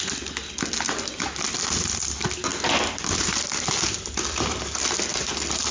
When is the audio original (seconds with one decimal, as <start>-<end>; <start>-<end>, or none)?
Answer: 0.0-2.5; 4.6-5.7